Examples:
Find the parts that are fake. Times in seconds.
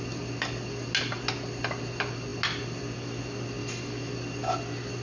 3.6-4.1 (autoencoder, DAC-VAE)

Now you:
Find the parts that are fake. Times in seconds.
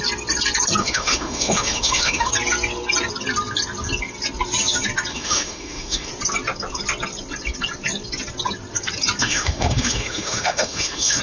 0.8-2.3 (autoencoder, DAC-VAE); 5.1-6.1; 9.2-11.2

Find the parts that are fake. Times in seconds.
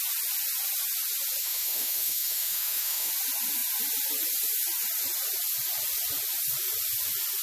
1.4-3.1 (autoencoder, DAC-VAE)